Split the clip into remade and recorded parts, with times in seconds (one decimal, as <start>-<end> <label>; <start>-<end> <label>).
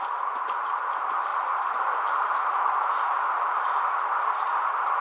0.0-5.0 recorded